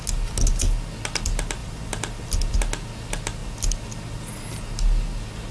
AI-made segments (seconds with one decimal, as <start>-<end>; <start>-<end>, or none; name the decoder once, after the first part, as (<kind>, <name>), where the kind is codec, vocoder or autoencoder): 1.6-2.6 (vocoder, BigVGAN v2)